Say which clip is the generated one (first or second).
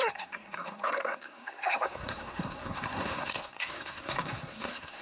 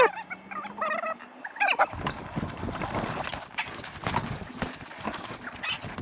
first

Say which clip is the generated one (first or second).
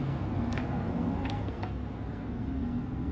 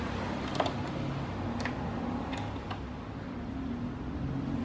first